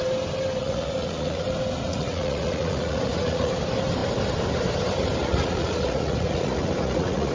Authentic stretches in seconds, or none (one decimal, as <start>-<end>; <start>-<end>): 0.0-0.6; 1.4-1.9; 3.6-5.2